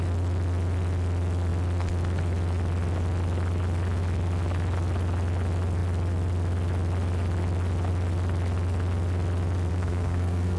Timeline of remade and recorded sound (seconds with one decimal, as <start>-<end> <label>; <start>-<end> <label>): 0.0-9.7 recorded; 9.7-10.6 remade

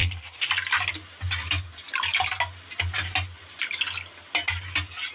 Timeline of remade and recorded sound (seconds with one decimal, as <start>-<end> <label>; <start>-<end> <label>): 0.0-0.5 remade; 0.5-5.1 recorded